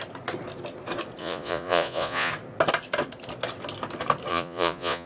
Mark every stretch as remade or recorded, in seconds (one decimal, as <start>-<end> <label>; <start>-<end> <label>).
0.0-1.2 recorded; 1.2-2.3 remade; 2.3-4.3 recorded; 4.3-5.1 remade